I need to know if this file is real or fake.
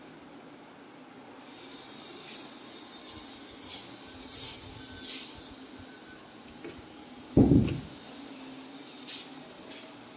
real